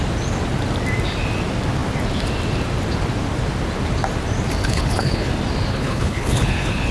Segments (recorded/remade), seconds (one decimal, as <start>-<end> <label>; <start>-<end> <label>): 0.0-4.6 recorded; 4.6-5.3 remade; 5.3-5.7 recorded; 5.7-6.9 remade

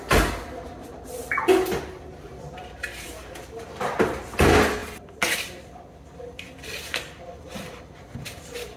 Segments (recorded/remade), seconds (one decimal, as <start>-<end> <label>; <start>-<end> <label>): 0.0-0.8 recorded; 0.8-3.8 remade; 3.8-8.8 recorded

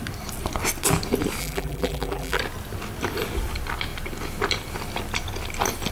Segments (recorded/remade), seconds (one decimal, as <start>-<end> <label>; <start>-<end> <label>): 0.0-1.4 recorded; 1.4-2.4 remade; 2.4-5.9 recorded

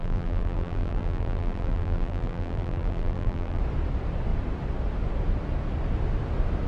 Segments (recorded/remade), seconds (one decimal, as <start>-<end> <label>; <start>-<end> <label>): 0.0-3.6 remade; 3.6-6.7 recorded

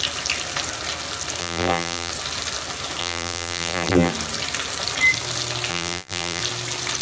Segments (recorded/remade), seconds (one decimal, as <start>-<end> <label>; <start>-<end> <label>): 0.0-1.4 recorded; 1.4-2.1 remade; 2.1-3.0 recorded; 3.0-4.1 remade; 4.1-5.7 recorded; 5.7-6.4 remade; 6.4-7.0 recorded